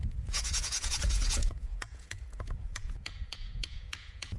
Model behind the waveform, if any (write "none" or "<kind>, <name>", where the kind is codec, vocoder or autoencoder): vocoder, Vocos